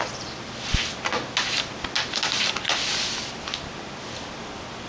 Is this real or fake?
real